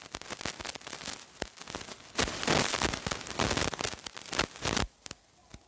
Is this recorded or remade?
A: recorded